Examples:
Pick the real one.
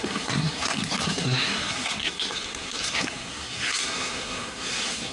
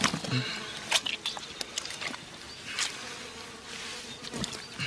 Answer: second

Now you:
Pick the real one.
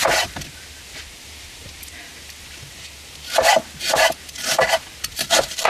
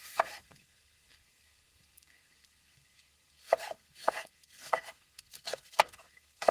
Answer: first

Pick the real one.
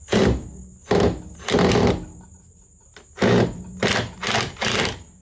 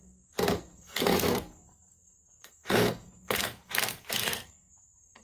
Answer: first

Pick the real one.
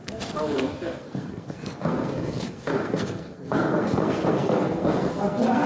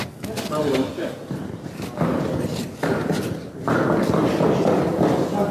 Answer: second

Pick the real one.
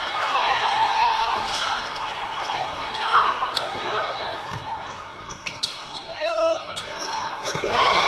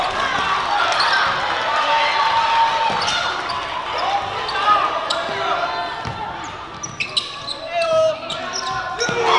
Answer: second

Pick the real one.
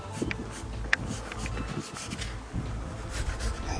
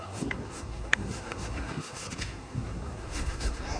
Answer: first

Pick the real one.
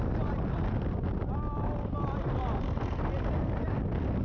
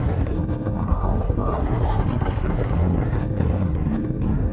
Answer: first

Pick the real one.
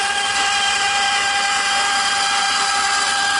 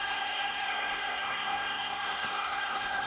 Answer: first